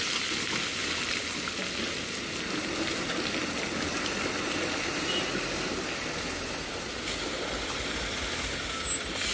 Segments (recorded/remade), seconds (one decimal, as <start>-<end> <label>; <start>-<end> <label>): 0.0-9.3 recorded

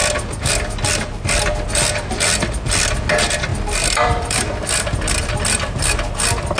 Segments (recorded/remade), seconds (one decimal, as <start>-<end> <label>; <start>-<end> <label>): 0.0-3.5 recorded; 3.5-5.9 remade; 5.9-6.6 recorded